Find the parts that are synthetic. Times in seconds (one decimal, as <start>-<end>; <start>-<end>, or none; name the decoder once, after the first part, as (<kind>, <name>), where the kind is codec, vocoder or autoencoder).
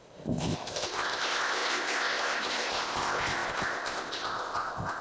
0.0-5.0 (codec, ZipCodec)